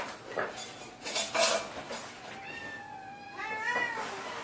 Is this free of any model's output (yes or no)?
yes